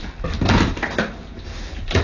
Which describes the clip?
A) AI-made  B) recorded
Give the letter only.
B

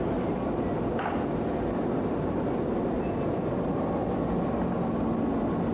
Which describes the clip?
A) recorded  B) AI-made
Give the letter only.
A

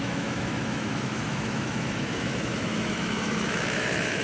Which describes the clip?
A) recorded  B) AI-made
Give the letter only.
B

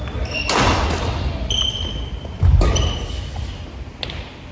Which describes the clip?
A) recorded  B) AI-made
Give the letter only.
A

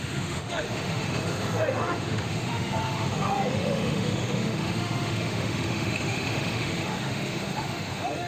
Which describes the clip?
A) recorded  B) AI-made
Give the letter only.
B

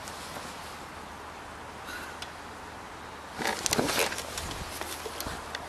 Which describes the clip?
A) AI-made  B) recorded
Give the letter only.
B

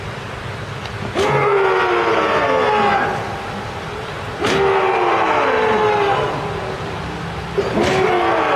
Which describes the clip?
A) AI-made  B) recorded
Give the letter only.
B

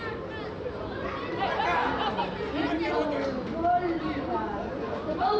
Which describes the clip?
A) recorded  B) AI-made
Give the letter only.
A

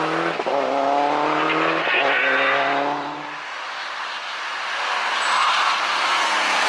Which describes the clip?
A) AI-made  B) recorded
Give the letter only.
B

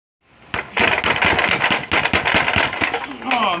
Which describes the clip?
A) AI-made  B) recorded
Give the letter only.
B